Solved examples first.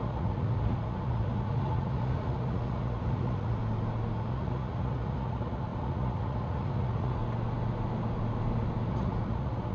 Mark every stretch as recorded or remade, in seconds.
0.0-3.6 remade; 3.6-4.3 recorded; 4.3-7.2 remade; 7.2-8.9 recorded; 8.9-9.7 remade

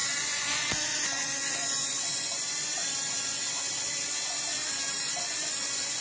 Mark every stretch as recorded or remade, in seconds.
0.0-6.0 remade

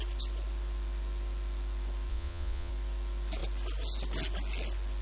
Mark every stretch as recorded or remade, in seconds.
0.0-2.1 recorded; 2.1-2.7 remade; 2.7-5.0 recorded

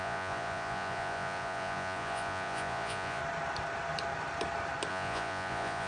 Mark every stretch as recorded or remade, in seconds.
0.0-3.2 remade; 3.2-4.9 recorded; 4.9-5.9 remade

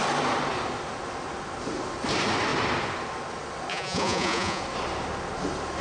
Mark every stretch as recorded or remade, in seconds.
0.0-3.7 recorded; 3.7-4.6 remade; 4.6-5.8 recorded

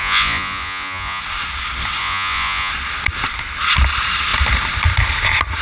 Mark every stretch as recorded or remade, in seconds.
0.0-1.2 remade; 1.2-2.0 recorded; 2.0-2.7 remade; 2.7-5.6 recorded

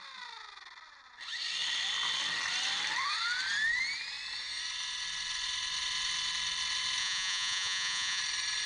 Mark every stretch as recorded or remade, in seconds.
0.0-7.0 recorded; 7.0-8.2 remade; 8.2-8.7 recorded

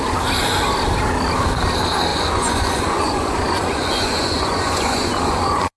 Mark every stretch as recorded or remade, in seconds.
0.0-2.1 recorded; 2.1-5.8 remade